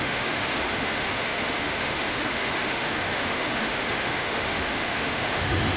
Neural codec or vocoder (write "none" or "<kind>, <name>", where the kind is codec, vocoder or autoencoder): autoencoder, DAC-VAE